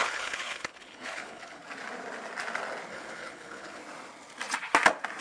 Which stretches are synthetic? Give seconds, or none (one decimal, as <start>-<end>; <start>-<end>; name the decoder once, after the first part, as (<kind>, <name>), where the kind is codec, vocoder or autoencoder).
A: 0.0-1.6 (codec, HILCodec); 2.9-3.8